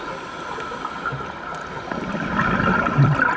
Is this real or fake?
real